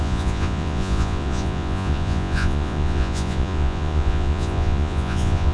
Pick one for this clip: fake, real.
fake